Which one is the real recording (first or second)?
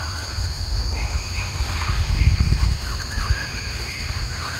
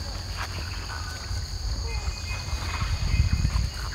second